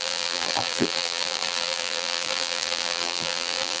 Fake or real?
fake